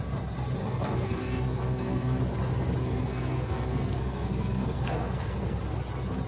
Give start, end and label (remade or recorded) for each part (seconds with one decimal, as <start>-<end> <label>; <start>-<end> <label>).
0.0-0.6 recorded; 0.6-2.2 remade; 2.2-2.8 recorded; 2.8-5.6 remade; 5.6-6.3 recorded